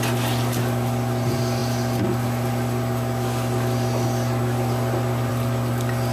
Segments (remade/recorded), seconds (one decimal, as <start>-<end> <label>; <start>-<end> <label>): 0.0-6.1 recorded